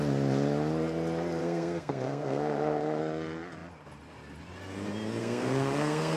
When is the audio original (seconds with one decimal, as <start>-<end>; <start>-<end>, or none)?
0.0-1.4; 3.0-5.2